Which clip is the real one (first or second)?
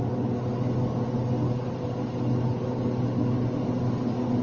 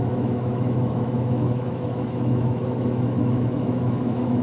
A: first